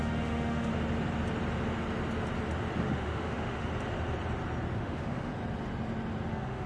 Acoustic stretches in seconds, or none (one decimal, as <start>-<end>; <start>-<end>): 0.7-2.9; 3.7-4.8; 5.3-6.3